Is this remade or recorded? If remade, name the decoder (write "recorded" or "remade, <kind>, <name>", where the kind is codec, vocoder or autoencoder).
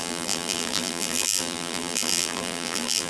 remade, vocoder, BigVGAN v2